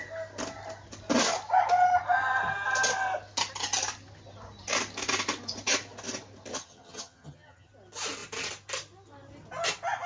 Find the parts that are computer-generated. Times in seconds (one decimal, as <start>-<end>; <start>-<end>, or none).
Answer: 6.5-7.7